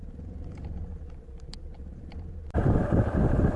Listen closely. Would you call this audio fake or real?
real